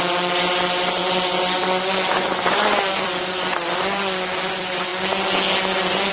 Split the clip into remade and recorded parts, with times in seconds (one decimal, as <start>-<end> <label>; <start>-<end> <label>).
0.0-4.9 remade; 4.9-6.1 recorded